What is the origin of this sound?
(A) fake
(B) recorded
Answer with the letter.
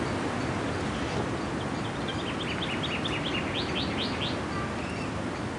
B